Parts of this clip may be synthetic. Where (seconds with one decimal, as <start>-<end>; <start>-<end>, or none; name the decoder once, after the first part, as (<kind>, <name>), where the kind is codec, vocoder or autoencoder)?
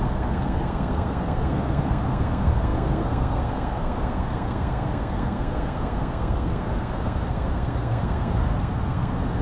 0.0-9.4 (codec, SNAC)